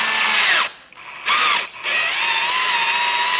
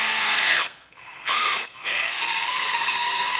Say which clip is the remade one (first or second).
second